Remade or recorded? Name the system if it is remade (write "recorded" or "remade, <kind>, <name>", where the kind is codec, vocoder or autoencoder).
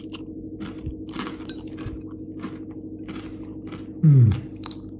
recorded